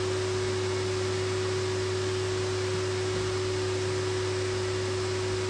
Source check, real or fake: real